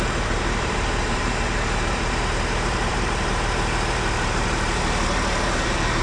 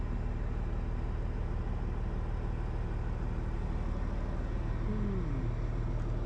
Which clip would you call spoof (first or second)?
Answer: first